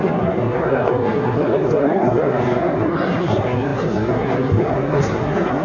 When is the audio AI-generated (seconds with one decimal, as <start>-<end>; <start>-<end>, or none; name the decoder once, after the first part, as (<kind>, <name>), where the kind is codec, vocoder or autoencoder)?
0.0-5.6 (codec, SNAC)